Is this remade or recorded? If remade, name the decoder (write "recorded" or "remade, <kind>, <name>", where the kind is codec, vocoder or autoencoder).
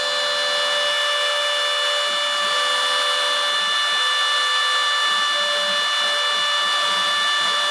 recorded